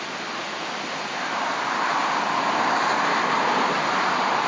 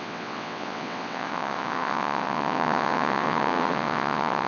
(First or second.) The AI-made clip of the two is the second